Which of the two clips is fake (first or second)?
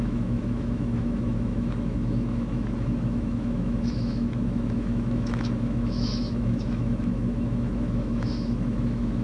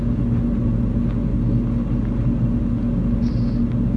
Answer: first